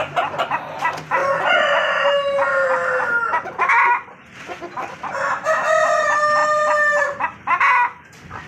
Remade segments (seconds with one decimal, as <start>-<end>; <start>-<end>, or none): none